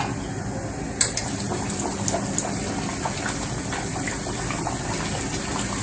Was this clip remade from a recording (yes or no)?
no